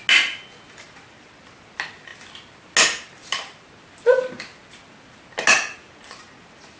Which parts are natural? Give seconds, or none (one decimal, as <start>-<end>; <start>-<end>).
0.0-6.8